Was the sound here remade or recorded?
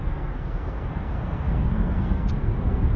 remade